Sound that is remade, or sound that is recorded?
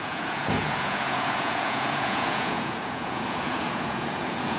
remade